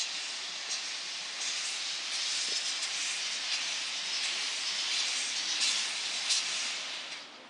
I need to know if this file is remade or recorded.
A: recorded